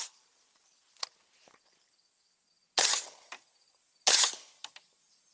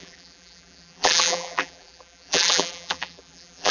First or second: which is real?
first